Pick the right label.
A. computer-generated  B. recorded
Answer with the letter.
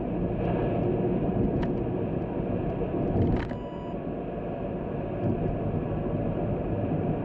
B